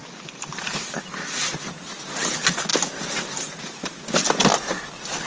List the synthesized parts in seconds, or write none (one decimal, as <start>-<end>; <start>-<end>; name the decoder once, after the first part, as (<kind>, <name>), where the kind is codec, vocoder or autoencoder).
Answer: 0.0-2.0 (vocoder, BigVGAN v2)